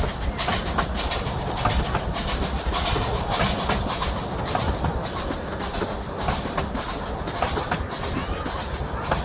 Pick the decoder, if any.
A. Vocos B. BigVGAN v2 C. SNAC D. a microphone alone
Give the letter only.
B